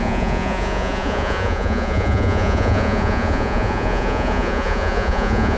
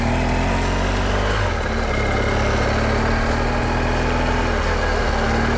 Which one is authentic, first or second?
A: second